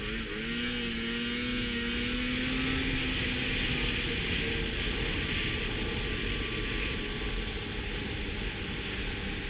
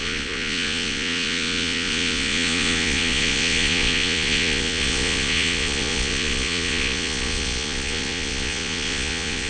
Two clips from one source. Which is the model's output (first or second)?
second